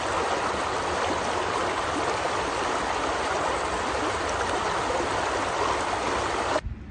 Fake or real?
real